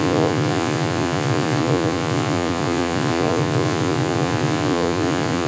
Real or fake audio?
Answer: fake